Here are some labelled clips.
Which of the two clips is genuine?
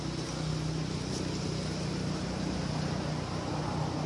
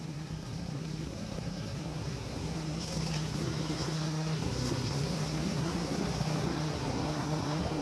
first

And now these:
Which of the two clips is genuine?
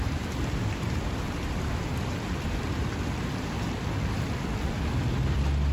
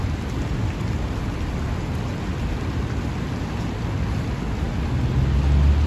second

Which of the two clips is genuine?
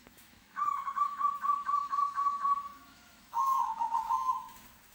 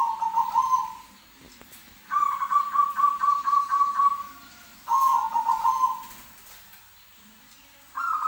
second